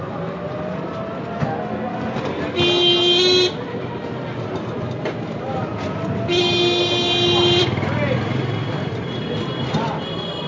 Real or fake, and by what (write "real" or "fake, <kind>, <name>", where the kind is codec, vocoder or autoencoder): real